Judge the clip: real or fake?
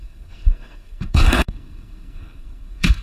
fake